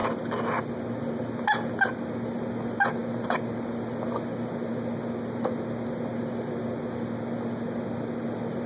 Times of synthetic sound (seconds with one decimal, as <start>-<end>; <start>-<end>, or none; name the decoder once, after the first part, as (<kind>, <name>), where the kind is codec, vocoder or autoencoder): none